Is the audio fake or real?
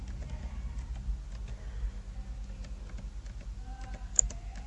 real